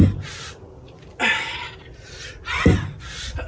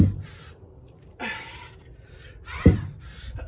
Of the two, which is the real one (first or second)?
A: first